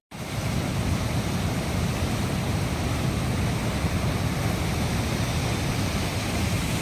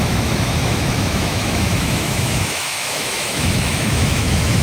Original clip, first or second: first